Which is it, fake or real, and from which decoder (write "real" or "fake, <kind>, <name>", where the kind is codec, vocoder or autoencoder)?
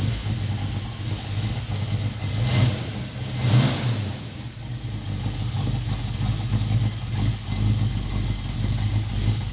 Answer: real